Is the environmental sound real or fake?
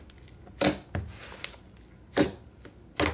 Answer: real